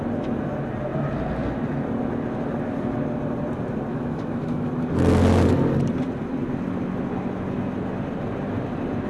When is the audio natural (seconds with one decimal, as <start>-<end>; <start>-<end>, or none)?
0.0-3.9; 4.7-9.1